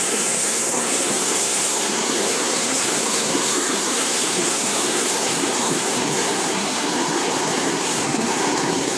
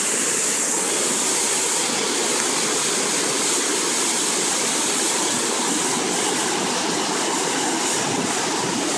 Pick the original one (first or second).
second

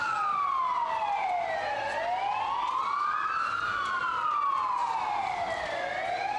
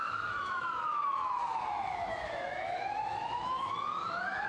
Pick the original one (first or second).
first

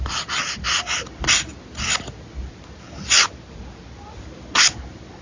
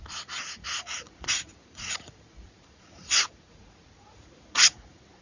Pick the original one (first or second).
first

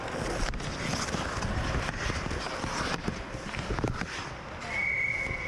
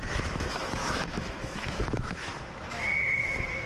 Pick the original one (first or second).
first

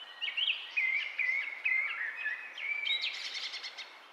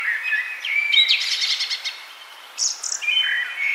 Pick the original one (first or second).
second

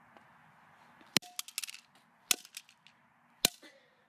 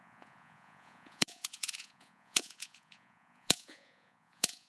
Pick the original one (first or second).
first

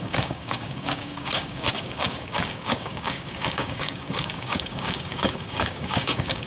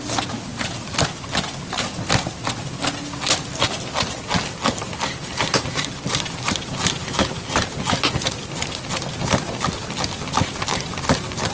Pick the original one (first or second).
second